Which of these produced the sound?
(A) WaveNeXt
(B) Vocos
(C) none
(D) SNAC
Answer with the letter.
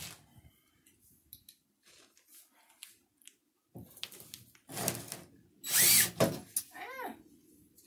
C